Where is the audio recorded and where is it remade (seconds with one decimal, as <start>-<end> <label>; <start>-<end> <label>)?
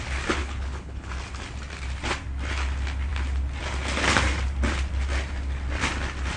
0.0-0.4 recorded; 0.4-1.1 remade; 1.1-6.4 recorded